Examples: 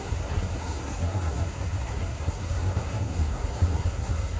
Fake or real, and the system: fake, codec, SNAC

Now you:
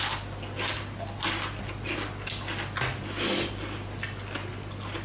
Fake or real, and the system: real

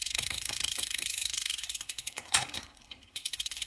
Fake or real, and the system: fake, codec, SNAC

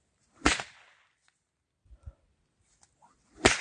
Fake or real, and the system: real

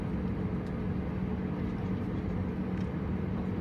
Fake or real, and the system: real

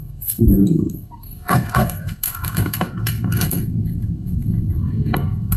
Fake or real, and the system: fake, codec, SNAC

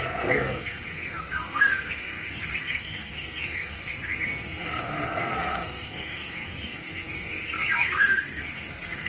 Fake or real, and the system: fake, codec, SNAC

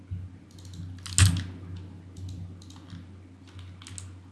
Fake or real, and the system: real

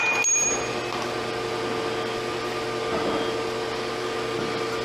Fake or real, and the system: real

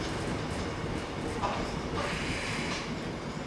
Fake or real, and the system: real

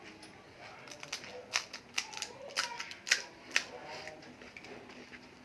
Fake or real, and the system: real